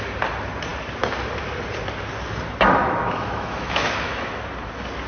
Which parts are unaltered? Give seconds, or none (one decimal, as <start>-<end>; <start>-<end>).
0.0-2.8; 4.4-5.1